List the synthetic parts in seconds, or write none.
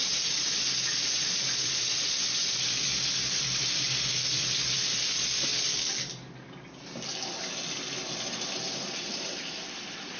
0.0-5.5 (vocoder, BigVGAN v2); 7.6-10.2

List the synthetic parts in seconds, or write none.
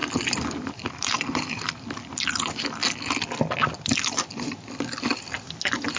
0.0-2.8 (vocoder, BigVGAN v2); 5.4-6.0